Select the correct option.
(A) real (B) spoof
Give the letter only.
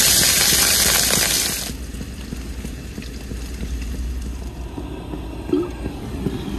A